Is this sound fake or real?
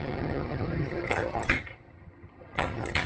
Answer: fake